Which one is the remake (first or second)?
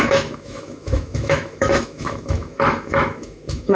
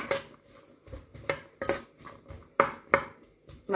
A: first